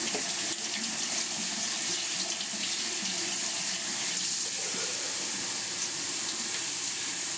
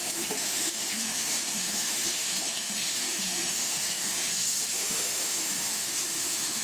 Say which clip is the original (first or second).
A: first